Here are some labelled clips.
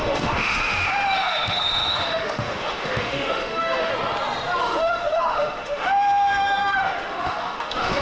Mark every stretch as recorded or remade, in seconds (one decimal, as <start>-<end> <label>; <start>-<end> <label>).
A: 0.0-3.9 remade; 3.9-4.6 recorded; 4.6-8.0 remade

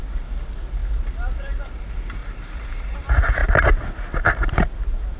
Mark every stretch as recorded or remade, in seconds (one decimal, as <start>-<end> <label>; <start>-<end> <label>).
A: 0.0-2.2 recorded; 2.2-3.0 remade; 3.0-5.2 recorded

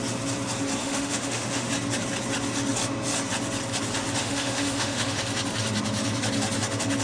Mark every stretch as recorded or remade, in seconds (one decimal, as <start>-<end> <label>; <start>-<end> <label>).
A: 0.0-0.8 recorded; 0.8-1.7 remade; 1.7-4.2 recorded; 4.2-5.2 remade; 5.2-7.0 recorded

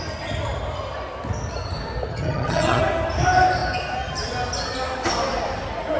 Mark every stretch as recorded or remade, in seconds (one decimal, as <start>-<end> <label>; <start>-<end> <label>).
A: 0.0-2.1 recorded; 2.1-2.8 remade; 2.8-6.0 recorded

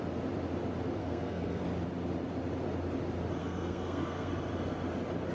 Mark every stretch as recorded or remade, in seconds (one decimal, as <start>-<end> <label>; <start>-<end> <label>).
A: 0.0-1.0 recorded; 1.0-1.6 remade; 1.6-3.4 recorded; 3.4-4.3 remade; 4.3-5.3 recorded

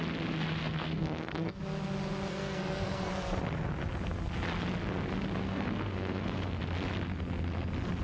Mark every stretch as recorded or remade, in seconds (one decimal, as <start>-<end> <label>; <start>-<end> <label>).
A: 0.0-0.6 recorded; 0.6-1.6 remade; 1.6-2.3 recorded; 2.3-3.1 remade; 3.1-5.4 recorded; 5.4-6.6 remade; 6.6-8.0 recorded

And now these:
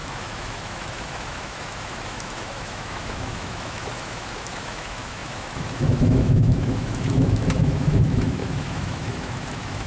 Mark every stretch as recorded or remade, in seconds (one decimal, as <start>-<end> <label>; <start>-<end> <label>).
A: 0.0-9.9 remade